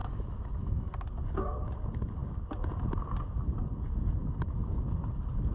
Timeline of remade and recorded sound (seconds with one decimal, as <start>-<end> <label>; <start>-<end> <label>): 0.0-0.9 remade; 0.9-5.5 recorded